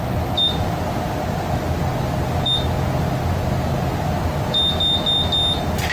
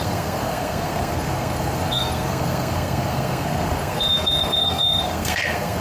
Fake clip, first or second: second